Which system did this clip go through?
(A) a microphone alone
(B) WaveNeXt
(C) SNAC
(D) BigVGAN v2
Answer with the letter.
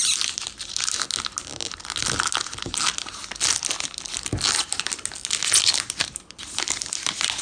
A